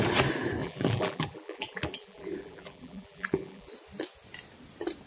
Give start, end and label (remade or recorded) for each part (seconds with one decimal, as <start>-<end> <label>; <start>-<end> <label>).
0.0-0.6 recorded; 0.6-3.7 remade; 3.7-5.1 recorded